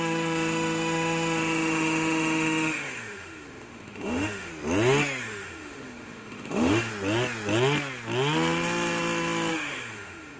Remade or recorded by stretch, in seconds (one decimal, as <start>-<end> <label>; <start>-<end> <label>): 0.0-4.5 remade; 4.5-5.2 recorded; 5.2-6.9 remade; 6.9-9.5 recorded; 9.5-10.4 remade